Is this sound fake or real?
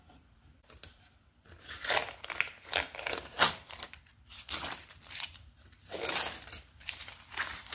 fake